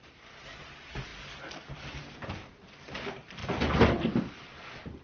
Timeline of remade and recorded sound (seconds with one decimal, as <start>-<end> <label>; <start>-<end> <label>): 0.0-5.0 recorded